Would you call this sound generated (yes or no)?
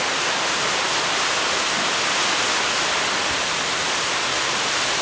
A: no